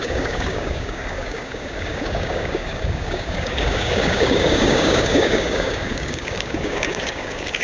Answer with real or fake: fake